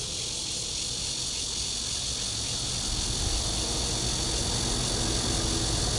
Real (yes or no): yes